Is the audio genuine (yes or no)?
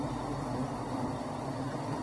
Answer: yes